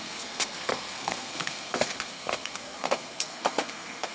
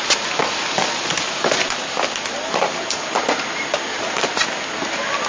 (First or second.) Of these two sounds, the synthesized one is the first